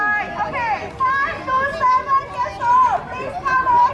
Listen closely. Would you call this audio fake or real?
real